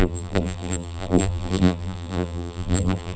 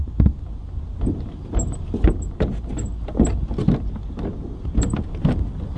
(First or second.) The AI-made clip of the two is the first